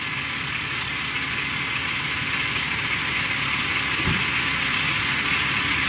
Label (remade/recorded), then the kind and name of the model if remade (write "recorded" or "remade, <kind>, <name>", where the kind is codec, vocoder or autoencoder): recorded